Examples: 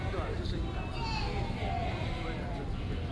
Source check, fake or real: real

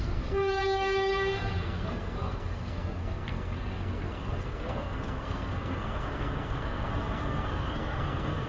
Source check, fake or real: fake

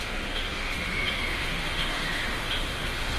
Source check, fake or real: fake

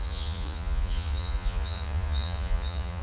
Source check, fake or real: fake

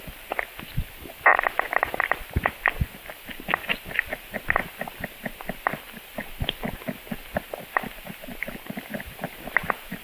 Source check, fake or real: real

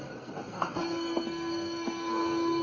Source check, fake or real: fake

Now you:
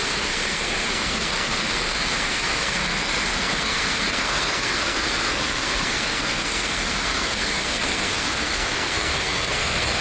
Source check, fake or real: fake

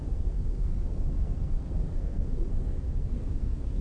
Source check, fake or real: fake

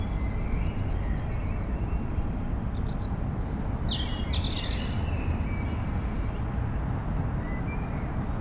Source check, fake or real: real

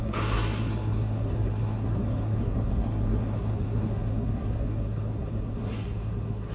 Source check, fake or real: fake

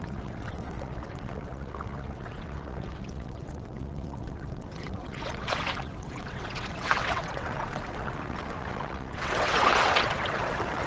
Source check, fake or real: fake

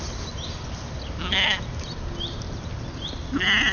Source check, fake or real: real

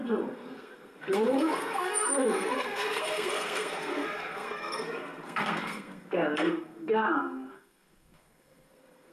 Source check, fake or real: fake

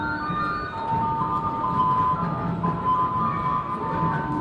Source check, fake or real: real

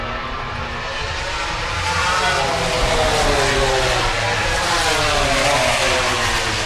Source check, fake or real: real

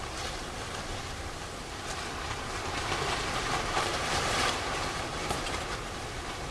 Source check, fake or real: fake